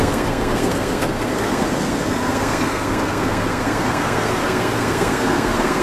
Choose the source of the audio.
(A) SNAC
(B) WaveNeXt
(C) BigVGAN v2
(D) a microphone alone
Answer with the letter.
A